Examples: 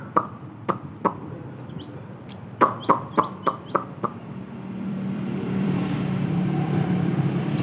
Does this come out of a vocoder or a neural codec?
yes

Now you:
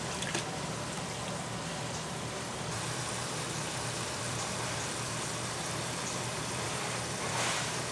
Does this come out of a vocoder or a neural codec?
yes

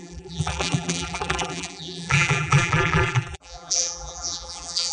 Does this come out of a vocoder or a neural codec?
yes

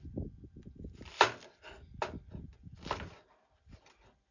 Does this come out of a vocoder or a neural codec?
no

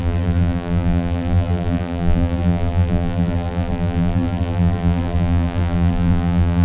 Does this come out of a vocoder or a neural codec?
yes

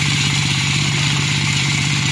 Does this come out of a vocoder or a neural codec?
yes